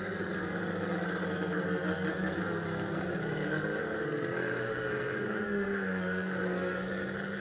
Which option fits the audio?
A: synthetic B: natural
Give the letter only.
A